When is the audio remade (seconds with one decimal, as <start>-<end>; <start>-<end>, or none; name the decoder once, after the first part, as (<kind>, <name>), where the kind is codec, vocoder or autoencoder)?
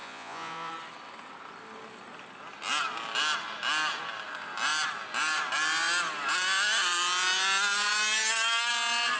0.0-0.7 (vocoder, Vocos)